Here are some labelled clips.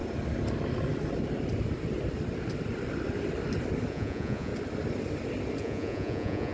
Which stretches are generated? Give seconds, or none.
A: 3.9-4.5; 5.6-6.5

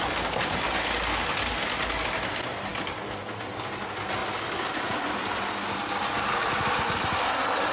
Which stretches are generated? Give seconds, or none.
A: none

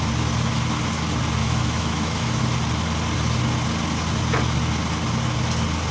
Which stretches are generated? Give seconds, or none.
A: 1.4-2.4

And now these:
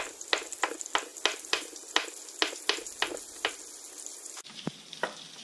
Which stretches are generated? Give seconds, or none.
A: 4.1-4.8

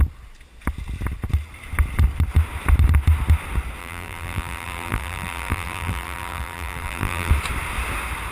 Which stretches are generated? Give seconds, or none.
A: 3.8-7.3